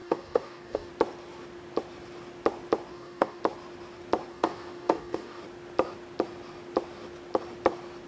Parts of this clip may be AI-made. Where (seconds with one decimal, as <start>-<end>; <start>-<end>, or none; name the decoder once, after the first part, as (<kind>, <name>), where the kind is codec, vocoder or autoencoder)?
0.0-0.9 (codec, DAC); 2.9-3.4; 4.3-5.4